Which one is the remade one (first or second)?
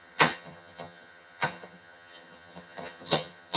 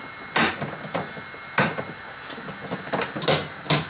first